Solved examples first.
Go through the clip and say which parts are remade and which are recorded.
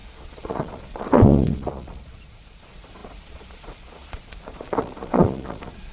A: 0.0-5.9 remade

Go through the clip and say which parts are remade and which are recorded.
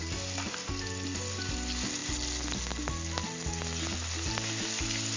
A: 0.0-5.2 recorded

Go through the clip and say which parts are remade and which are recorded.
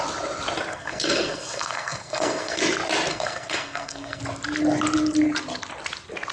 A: 0.0-0.7 recorded; 0.7-2.6 remade; 2.6-3.1 recorded; 3.1-4.2 remade; 4.2-6.3 recorded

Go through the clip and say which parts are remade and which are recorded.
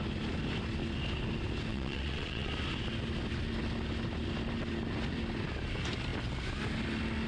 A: 0.0-1.7 recorded; 1.7-2.5 remade; 2.5-7.3 recorded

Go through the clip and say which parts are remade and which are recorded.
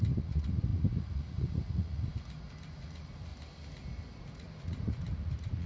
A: 0.0-2.1 remade; 2.1-2.7 recorded; 2.7-3.3 remade; 3.3-4.2 recorded; 4.2-5.7 remade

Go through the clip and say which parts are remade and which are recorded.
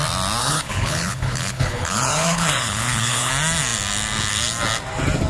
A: 0.0-0.4 recorded; 0.4-3.3 remade; 3.3-5.3 recorded